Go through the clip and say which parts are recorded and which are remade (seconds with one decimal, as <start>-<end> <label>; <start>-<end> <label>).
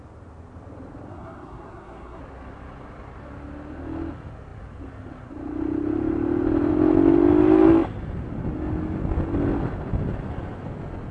0.0-1.1 recorded; 1.1-2.2 remade; 2.2-11.1 recorded